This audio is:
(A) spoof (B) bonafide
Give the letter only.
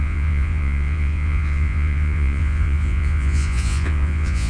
A